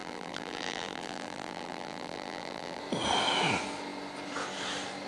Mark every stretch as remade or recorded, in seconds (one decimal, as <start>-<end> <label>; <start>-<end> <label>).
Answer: 0.0-2.8 remade; 2.8-5.1 recorded